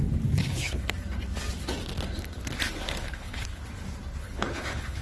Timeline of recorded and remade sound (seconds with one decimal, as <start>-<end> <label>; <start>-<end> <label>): 0.0-0.4 recorded; 0.4-0.9 remade; 0.9-3.0 recorded; 3.0-3.6 remade; 3.6-4.2 recorded; 4.2-5.0 remade